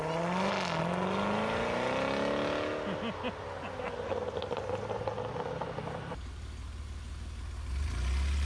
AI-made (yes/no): no